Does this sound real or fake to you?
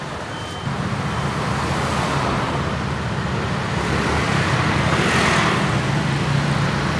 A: real